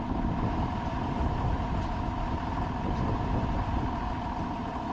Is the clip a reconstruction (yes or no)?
yes